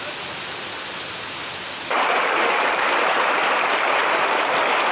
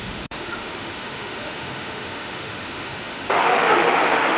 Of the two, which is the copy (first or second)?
second